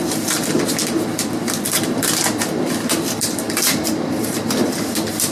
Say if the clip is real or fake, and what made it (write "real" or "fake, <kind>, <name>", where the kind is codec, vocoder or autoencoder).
fake, vocoder, BigVGAN v2